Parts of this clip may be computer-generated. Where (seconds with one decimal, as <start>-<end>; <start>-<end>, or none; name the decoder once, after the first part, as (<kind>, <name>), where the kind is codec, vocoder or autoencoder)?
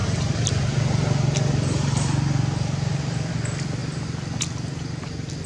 none